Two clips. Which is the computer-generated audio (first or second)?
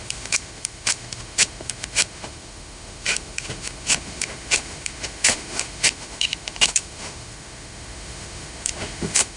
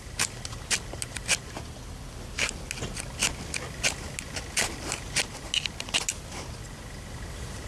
first